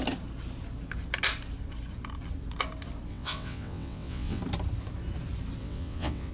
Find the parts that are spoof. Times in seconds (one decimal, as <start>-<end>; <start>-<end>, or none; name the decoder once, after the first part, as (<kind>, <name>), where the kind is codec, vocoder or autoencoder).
3.1-4.4 (vocoder, WaveNeXt); 5.6-6.3